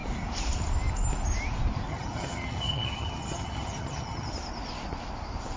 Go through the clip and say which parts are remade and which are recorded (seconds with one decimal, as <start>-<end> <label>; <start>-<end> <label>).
0.0-1.9 recorded; 1.9-4.3 remade; 4.3-5.6 recorded